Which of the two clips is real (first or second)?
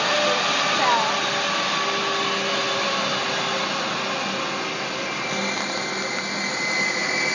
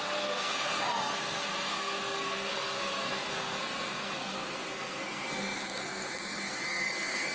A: first